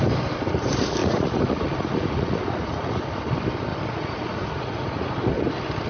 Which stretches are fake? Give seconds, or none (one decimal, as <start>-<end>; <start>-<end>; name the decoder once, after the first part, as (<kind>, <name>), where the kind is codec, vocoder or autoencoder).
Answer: 1.0-3.0 (vocoder, Vocos); 3.7-5.1